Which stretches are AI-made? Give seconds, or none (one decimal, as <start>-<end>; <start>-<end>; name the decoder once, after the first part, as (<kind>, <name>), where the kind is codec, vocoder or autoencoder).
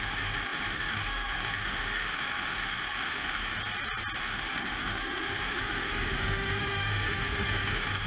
0.0-3.4 (autoencoder, DAC-VAE); 4.2-8.1